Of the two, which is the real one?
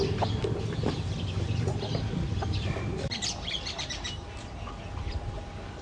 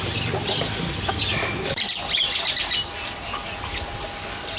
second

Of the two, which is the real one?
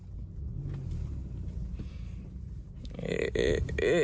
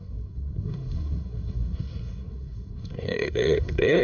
first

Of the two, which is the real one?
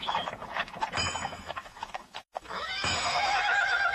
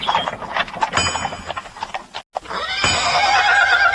second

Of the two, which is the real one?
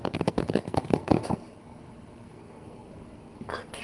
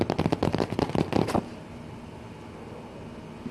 second